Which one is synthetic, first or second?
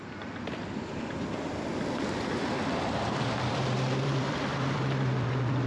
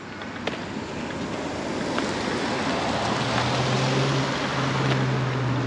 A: first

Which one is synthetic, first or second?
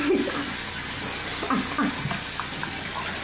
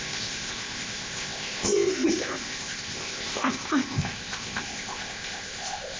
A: second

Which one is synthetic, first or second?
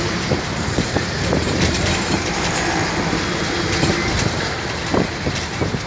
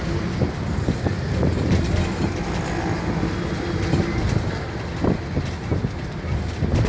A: first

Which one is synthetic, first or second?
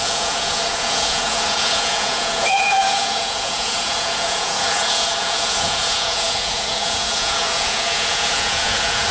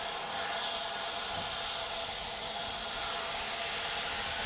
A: first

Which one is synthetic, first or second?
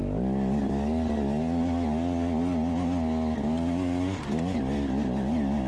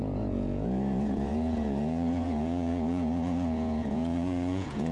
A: second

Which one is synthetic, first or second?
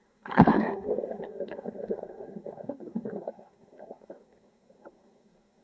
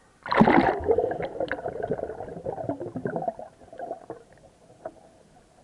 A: first